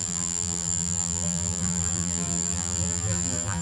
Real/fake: fake